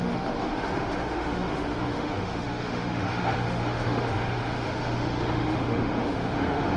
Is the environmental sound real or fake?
fake